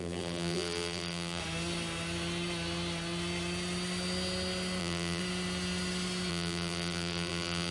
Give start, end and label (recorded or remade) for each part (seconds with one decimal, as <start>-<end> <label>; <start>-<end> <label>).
0.0-1.4 remade; 1.4-4.8 recorded; 4.8-5.2 remade; 5.2-6.3 recorded; 6.3-7.7 remade

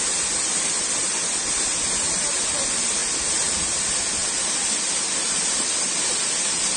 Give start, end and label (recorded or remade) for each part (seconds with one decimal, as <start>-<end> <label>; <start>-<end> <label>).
0.0-6.8 recorded

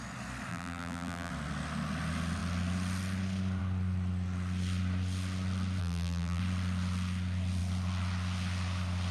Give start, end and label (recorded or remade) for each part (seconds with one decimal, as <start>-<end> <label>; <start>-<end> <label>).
0.0-0.5 recorded; 0.5-1.3 remade; 1.3-5.8 recorded; 5.8-6.4 remade; 6.4-9.1 recorded

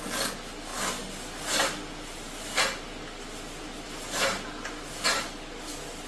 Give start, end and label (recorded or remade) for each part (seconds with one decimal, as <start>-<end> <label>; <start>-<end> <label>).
0.0-6.1 recorded

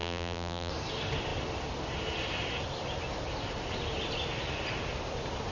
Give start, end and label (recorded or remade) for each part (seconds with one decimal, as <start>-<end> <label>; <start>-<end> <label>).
0.0-0.7 remade; 0.7-5.5 recorded